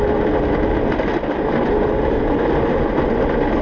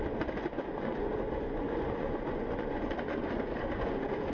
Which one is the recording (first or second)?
first